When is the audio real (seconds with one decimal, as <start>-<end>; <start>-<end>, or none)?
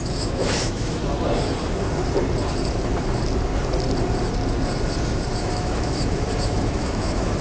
1.0-5.4